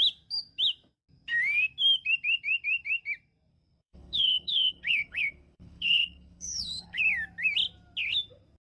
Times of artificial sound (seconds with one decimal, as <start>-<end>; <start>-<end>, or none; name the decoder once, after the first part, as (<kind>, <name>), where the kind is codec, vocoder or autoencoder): 3.5-7.0 (codec, HILCodec)